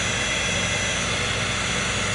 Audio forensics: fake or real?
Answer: real